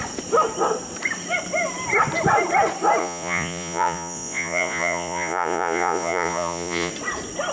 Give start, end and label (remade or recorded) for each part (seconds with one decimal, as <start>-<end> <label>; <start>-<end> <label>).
0.0-3.0 recorded; 3.0-6.9 remade; 6.9-7.5 recorded